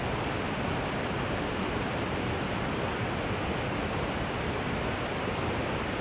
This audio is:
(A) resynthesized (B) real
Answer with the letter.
B